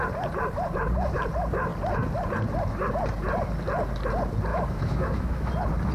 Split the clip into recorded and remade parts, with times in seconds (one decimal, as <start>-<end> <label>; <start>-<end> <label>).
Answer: 0.0-4.5 recorded; 4.5-5.5 remade; 5.5-5.9 recorded